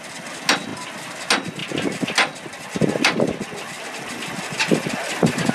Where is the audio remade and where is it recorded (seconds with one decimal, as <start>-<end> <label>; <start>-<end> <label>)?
0.0-5.5 recorded